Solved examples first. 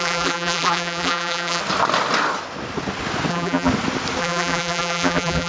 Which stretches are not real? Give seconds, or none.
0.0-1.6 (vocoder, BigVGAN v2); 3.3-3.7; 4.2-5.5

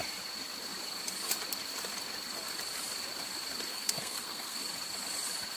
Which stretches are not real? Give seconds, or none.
3.7-4.6 (codec, SNAC)

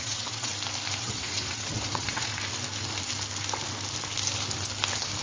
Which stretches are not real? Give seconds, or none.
0.0-0.5 (vocoder, WaveNeXt); 1.0-2.3

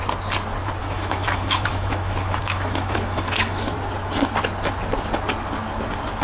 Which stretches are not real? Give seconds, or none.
0.8-3.7 (autoencoder, DAC-VAE)

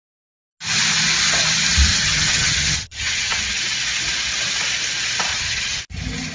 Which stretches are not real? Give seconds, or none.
1.9-3.6 (vocoder, HiFi-GAN); 5.3-5.8